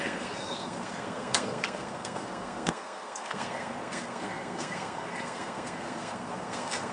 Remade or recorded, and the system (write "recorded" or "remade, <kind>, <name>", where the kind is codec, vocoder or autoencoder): remade, codec, SNAC